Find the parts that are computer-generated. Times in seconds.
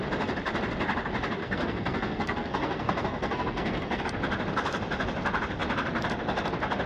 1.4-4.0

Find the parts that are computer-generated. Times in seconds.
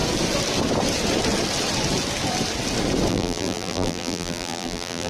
3.1-5.1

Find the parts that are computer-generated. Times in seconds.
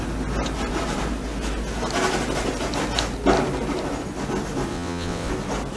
4.7-5.3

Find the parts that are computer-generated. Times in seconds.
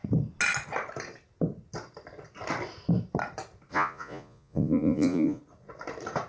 3.7-5.4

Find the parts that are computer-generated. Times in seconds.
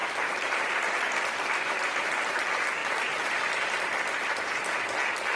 0.0-0.7; 2.8-4.7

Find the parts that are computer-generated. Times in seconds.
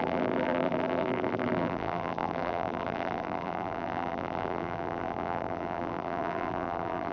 0.0-7.1